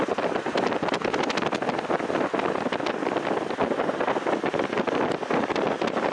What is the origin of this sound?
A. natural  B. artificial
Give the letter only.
A